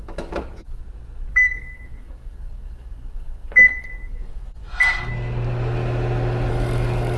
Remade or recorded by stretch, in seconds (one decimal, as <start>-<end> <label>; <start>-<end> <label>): 0.0-0.8 remade; 0.8-1.3 recorded; 1.3-4.6 remade; 4.6-6.5 recorded; 6.5-7.2 remade